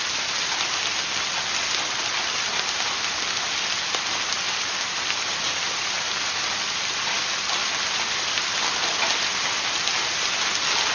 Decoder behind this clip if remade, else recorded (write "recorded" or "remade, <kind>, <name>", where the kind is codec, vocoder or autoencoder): recorded